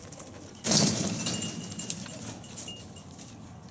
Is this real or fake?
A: real